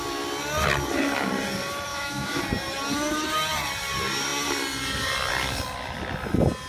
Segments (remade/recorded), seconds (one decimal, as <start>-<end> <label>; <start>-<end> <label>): 0.0-1.9 recorded; 1.9-2.4 remade; 2.4-6.7 recorded